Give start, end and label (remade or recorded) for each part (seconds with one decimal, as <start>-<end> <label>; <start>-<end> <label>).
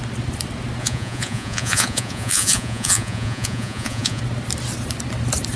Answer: 0.0-0.8 recorded; 0.8-4.2 remade; 4.2-5.6 recorded